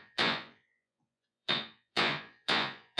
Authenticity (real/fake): fake